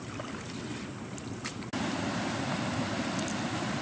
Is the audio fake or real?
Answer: real